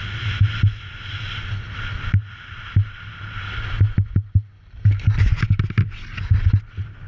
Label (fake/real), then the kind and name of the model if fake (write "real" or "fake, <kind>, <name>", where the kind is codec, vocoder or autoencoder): real